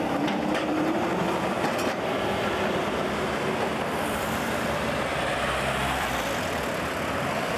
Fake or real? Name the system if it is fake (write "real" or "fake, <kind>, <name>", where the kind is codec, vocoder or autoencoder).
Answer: fake, vocoder, BigVGAN v2